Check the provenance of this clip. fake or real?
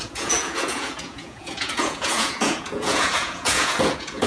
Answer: fake